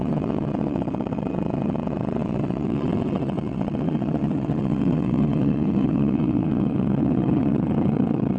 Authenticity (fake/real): fake